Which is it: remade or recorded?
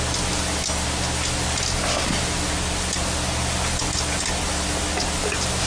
recorded